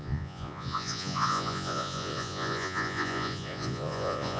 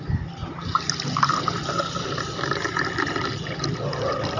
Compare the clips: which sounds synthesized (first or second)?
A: first